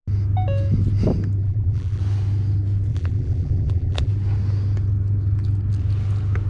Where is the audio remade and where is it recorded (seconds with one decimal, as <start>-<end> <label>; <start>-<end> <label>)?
0.0-1.4 recorded; 1.4-2.0 remade; 2.0-2.9 recorded; 2.9-4.1 remade; 4.1-6.5 recorded